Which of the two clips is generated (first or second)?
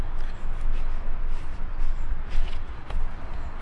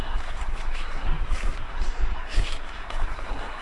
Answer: second